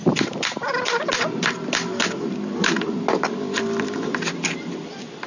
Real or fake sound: real